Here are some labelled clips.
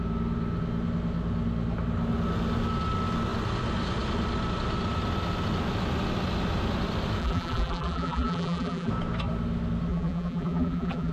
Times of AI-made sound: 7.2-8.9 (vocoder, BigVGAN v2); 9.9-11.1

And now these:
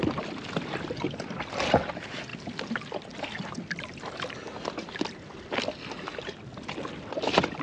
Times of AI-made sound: none

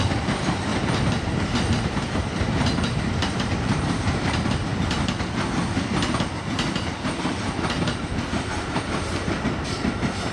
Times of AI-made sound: 0.0-0.7 (vocoder, BigVGAN v2); 1.3-4.7; 6.7-10.3

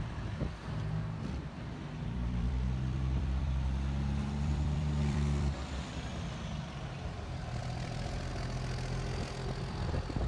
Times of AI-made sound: 0.0-8.3 (vocoder, BigVGAN v2); 9.6-10.3

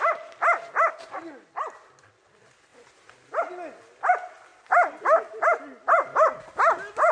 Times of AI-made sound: 4.5-6.4 (vocoder, BigVGAN v2)

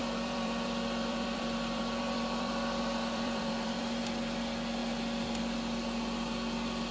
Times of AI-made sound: 0.0-4.0 (vocoder, BigVGAN v2)

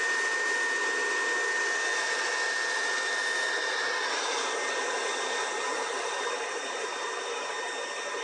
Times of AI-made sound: 5.8-7.5 (vocoder, BigVGAN v2)